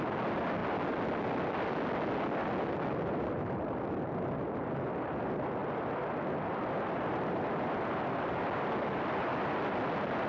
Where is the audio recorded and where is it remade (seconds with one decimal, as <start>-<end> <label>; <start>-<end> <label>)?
0.0-10.3 recorded